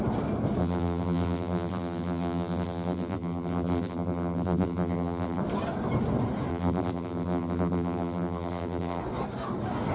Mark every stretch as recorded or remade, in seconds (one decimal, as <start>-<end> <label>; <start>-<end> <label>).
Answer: 0.0-0.6 recorded; 0.6-5.4 remade; 5.4-6.5 recorded; 6.5-9.0 remade; 9.0-9.9 recorded